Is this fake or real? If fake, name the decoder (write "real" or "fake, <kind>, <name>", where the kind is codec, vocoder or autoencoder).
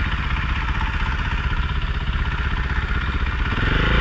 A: real